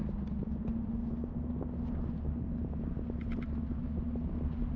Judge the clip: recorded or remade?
recorded